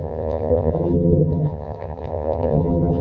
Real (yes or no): no